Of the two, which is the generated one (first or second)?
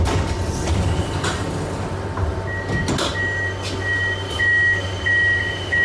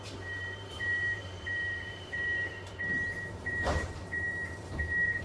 second